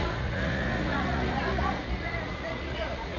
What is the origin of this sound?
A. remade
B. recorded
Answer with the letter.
A